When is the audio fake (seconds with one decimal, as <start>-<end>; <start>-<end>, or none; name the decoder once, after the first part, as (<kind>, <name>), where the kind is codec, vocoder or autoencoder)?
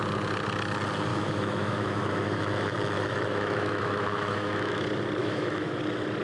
1.1-4.8 (autoencoder, DAC-VAE); 5.2-5.8